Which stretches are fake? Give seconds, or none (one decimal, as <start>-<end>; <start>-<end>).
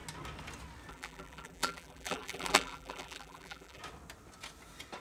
0.9-3.8